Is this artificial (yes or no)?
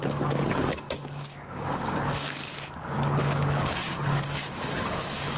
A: yes